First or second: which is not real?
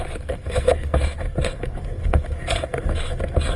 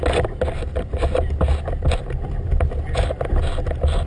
first